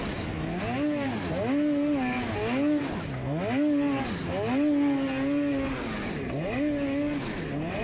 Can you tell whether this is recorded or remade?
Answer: recorded